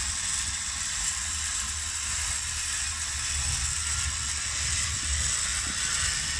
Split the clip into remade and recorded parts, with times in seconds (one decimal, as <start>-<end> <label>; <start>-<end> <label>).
0.0-6.4 recorded